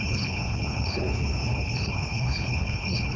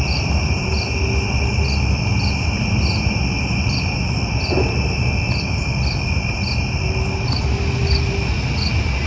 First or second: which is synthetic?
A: first